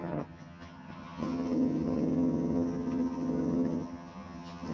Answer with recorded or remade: remade